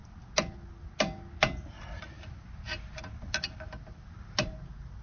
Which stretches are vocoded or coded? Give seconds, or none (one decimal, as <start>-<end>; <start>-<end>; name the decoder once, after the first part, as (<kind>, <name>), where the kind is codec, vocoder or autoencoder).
none